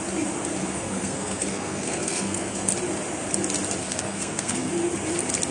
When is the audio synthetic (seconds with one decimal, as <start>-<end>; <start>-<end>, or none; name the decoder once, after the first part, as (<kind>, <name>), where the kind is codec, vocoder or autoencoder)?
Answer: 0.6-2.7 (codec, SNAC); 3.8-4.7